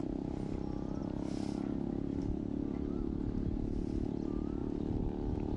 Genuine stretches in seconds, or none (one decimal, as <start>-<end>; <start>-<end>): 0.0-4.6